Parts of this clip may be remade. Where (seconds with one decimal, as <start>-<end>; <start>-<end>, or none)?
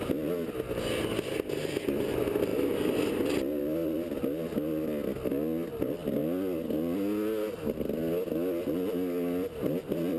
none